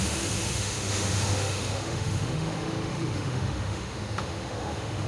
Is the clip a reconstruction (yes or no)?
yes